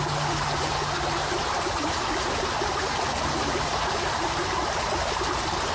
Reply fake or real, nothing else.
real